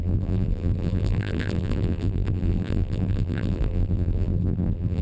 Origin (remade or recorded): remade